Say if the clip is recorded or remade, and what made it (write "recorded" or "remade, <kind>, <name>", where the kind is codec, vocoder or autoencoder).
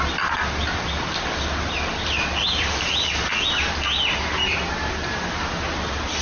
recorded